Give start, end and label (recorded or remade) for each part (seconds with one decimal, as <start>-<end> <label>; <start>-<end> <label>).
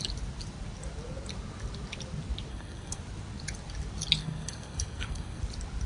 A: 0.0-2.5 recorded; 2.5-3.0 remade; 3.0-4.2 recorded; 4.2-5.4 remade; 5.4-5.9 recorded